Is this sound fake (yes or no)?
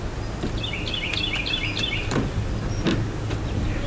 no